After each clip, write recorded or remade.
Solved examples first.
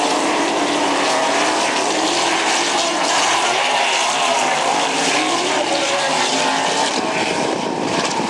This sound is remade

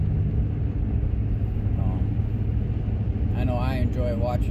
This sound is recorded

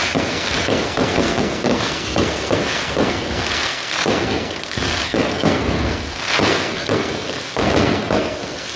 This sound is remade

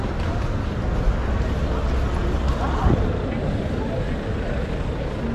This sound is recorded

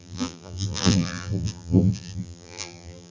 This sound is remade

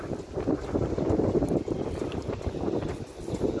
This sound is recorded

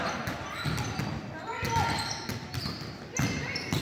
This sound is recorded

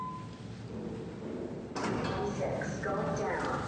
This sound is recorded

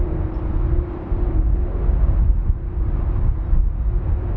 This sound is recorded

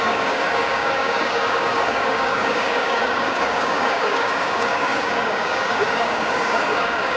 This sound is remade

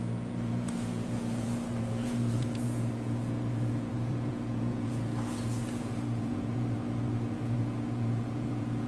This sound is remade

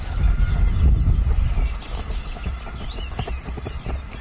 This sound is recorded